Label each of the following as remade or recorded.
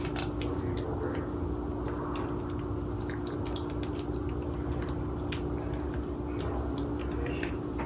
recorded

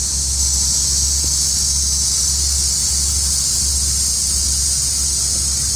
recorded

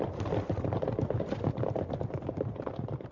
recorded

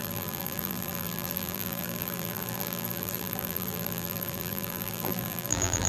remade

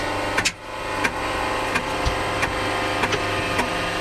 recorded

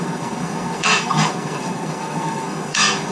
remade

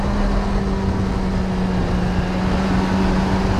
recorded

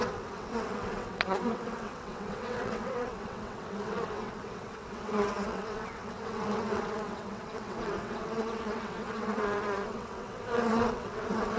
remade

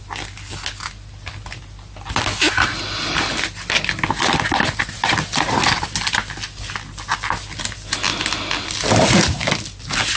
recorded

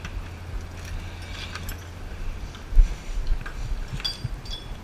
recorded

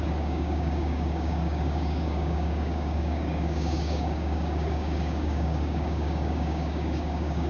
remade